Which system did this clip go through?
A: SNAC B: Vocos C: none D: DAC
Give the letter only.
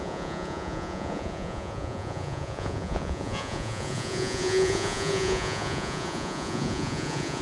B